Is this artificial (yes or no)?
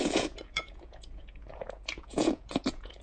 yes